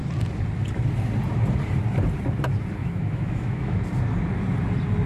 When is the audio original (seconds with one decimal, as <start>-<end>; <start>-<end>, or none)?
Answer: 0.0-2.8; 3.8-5.1